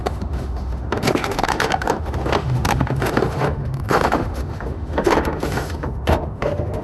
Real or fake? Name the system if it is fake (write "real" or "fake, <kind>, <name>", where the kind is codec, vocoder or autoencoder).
fake, autoencoder, DAC-VAE